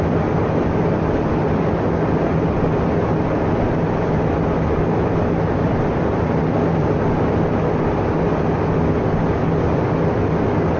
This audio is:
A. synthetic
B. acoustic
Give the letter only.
B